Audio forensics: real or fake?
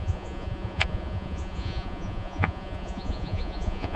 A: fake